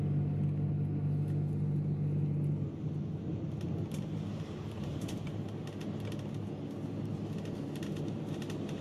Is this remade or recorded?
recorded